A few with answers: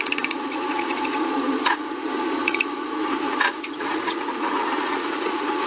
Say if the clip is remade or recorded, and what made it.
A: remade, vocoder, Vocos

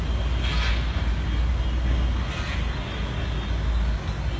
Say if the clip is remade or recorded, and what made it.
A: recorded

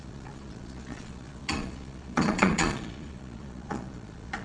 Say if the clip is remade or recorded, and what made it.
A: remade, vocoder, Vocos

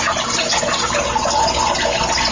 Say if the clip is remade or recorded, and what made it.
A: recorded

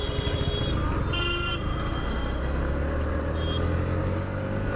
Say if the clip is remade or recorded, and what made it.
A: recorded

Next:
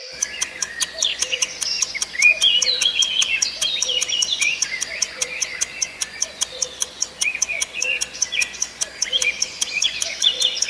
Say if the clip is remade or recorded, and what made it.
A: remade, vocoder, Vocos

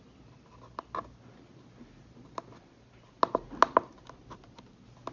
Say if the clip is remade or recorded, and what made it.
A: recorded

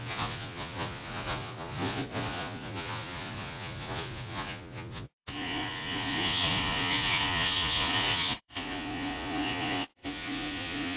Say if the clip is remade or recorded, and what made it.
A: remade, vocoder, Vocos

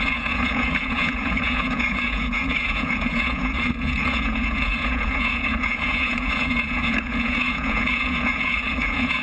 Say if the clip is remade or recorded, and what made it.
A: remade, vocoder, Vocos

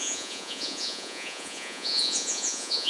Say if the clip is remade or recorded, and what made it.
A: remade, vocoder, Vocos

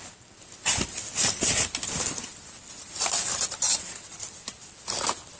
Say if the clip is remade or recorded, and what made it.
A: recorded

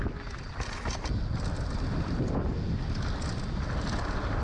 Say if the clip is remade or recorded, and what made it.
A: recorded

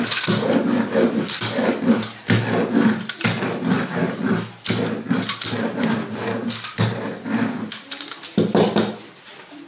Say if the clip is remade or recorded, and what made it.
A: recorded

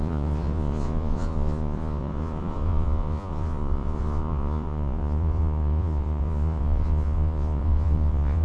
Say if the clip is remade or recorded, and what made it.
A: remade, vocoder, Vocos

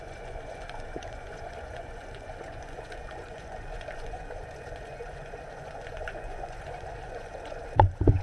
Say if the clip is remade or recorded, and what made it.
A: remade, vocoder, Vocos